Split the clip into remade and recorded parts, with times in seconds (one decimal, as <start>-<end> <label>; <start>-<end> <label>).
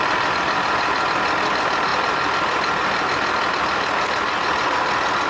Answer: 0.0-5.3 recorded